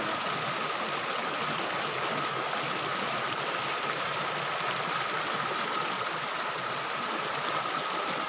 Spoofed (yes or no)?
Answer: no